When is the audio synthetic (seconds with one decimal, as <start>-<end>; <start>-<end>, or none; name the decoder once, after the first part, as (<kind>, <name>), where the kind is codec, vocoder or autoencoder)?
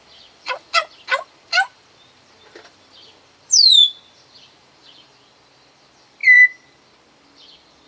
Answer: 0.0-7.9 (vocoder, BigVGAN v2)